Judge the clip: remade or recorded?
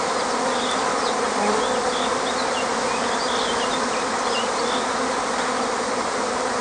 recorded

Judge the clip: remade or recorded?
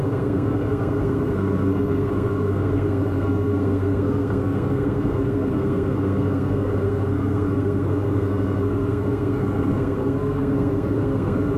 remade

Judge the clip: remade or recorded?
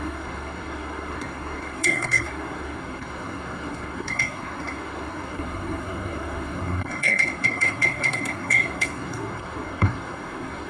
remade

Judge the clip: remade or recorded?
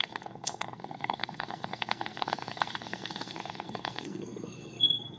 remade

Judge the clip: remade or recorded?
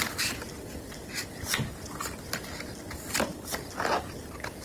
recorded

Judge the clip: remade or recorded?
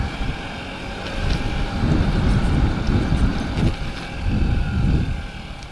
recorded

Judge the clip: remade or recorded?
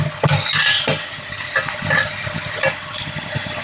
recorded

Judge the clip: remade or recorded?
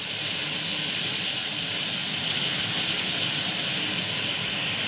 recorded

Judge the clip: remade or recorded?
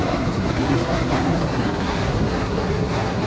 remade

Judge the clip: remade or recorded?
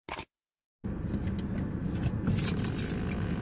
recorded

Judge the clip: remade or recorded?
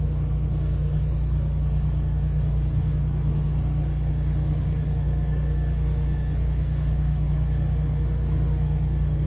remade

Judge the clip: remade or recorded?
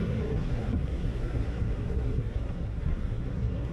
remade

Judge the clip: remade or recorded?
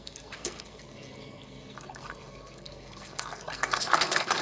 remade